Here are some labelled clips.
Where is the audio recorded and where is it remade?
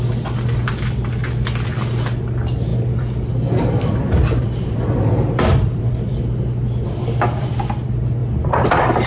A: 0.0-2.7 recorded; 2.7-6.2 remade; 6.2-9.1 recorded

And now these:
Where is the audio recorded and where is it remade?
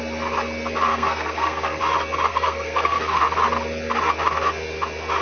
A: 0.0-0.9 recorded; 0.9-1.8 remade; 1.8-2.3 recorded; 2.3-3.2 remade; 3.2-5.2 recorded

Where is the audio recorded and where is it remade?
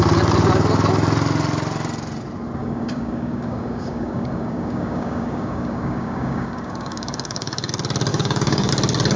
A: 0.0-2.6 recorded; 2.6-7.7 remade; 7.7-8.1 recorded; 8.1-8.7 remade; 8.7-9.2 recorded